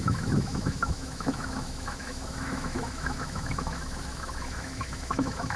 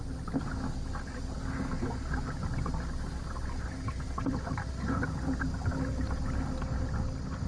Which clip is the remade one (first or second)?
first